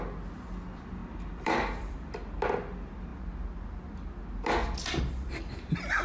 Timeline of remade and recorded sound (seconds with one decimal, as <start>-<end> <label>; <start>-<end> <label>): 0.0-1.0 recorded; 1.0-2.1 remade; 2.1-6.0 recorded